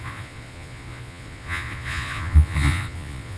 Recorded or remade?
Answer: remade